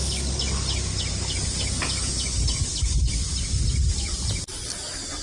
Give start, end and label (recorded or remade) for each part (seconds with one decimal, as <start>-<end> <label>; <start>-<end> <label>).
0.0-5.2 recorded